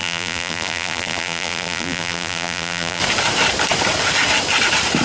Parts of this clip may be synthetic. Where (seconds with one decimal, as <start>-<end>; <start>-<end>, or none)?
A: 0.0-3.0